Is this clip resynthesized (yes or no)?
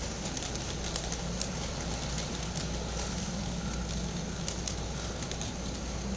no